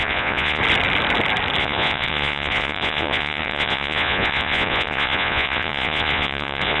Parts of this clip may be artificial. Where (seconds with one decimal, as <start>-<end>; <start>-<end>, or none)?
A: 0.0-0.6; 1.6-6.8